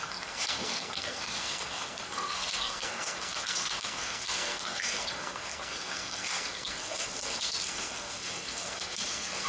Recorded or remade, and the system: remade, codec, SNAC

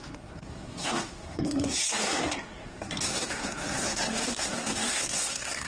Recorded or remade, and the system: remade, codec, SNAC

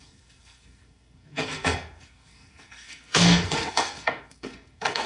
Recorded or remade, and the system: remade, codec, SNAC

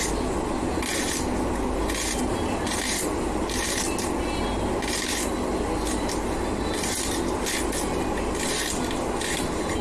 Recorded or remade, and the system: recorded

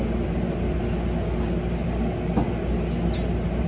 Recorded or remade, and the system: recorded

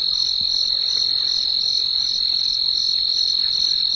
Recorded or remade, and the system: recorded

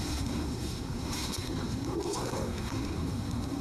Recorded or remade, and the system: remade, codec, SNAC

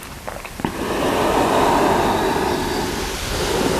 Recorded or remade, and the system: recorded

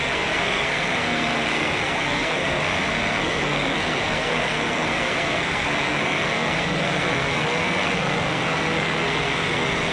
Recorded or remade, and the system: remade, codec, SNAC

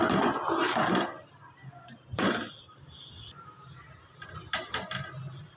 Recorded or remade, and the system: recorded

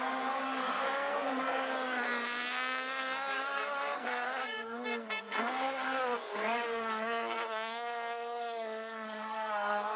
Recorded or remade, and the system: remade, codec, SNAC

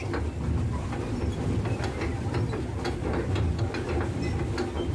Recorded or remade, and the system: recorded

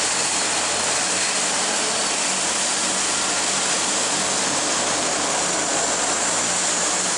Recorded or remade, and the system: recorded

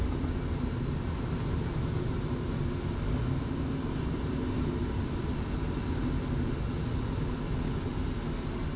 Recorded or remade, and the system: recorded